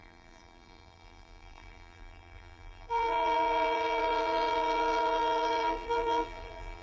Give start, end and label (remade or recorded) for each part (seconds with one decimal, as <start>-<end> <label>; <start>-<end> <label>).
0.0-6.8 remade